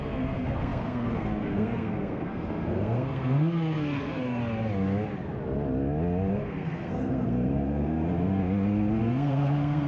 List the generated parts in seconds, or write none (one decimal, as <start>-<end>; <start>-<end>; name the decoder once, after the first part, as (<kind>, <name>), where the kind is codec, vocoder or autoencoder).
0.0-4.4 (codec, SNAC); 6.3-8.4; 9.0-9.9